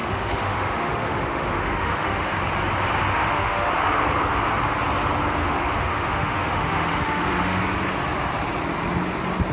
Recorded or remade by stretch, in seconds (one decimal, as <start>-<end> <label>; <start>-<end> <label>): 0.0-2.2 remade; 2.2-3.1 recorded; 3.1-3.7 remade; 3.7-5.4 recorded; 5.4-7.6 remade; 7.6-9.5 recorded